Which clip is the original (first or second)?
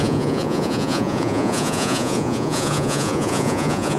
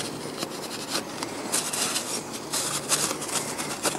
second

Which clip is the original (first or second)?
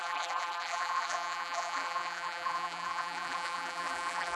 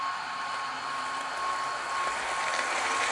second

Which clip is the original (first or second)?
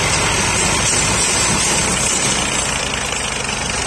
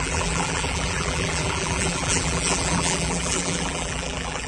first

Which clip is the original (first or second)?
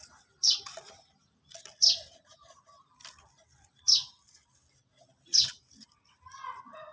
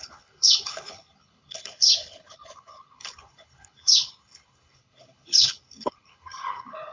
first